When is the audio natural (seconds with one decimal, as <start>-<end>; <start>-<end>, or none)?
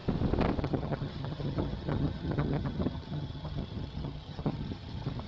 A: 0.0-0.6